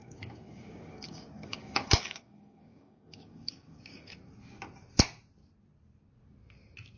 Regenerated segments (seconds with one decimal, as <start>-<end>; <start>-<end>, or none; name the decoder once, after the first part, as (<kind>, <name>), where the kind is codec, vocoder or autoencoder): 0.0-4.2 (codec, DAC)